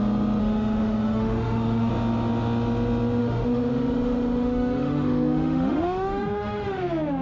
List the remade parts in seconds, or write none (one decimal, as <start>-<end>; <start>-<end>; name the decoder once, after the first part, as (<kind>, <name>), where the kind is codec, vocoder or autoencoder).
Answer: 0.4-1.9 (autoencoder, DAC-VAE); 3.2-6.8